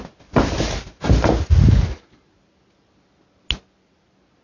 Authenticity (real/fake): real